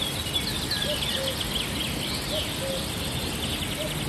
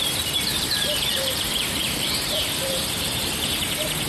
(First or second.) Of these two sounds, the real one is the first